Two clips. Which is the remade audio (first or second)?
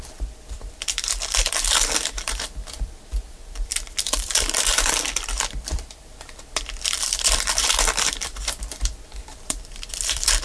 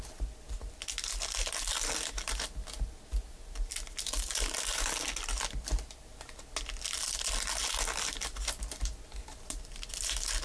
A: first